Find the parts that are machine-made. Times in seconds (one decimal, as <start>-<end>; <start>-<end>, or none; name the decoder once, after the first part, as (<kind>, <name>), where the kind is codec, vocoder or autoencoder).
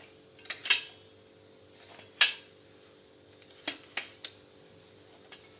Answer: none